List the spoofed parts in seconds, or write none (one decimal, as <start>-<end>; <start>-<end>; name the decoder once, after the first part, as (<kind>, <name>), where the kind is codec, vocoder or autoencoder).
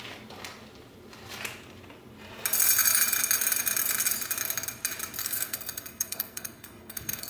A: 5.2-7.3 (codec, SNAC)